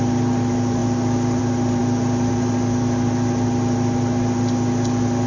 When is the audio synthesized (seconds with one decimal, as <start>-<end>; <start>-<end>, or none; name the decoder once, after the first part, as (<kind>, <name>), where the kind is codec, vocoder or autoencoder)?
0.0-1.8 (vocoder, BigVGAN v2); 2.3-5.3